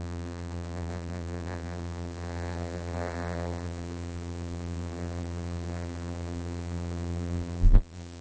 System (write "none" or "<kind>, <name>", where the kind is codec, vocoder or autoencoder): vocoder, BigVGAN v2